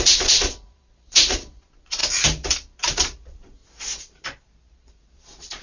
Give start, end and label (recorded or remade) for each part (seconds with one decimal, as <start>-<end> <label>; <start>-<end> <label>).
0.0-2.0 remade; 2.0-2.9 recorded; 2.9-3.6 remade; 3.6-4.6 recorded; 4.6-5.6 remade

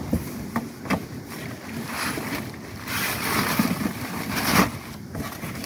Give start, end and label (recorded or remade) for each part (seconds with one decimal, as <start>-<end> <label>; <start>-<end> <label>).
0.0-1.0 recorded; 1.0-4.4 remade; 4.4-5.7 recorded

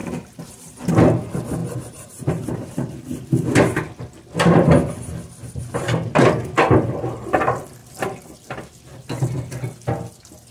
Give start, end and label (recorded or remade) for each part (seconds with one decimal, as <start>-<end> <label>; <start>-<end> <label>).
0.0-0.9 remade; 0.9-1.6 recorded; 1.6-2.7 remade; 2.7-10.5 recorded

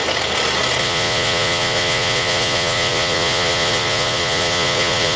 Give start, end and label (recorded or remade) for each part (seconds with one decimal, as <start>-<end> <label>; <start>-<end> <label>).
0.0-0.8 recorded; 0.8-5.2 remade

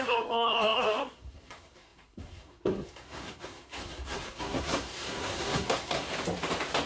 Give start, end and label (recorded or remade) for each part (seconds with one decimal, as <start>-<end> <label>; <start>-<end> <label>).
0.0-6.1 remade; 6.1-6.9 recorded

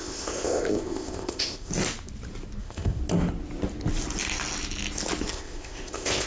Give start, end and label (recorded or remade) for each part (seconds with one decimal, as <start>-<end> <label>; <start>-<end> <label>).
0.0-1.7 remade; 1.7-2.6 recorded; 2.6-3.0 remade; 3.0-5.3 recorded; 5.3-6.3 remade

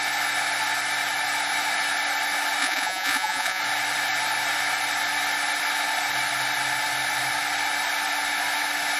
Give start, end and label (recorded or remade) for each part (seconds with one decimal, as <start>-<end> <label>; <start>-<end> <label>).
0.0-2.6 recorded; 2.6-3.6 remade; 3.6-9.0 recorded

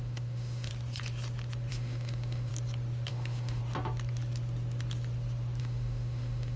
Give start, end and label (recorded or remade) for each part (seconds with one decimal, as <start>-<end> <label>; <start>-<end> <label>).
0.0-0.7 remade; 0.7-1.7 recorded; 1.7-2.5 remade; 2.5-3.1 recorded; 3.1-3.6 remade; 3.6-5.6 recorded; 5.6-6.6 remade